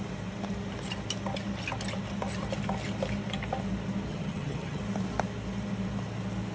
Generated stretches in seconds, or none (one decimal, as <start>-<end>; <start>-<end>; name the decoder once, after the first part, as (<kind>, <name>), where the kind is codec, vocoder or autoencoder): 4.1-4.8 (vocoder, HiFi-GAN)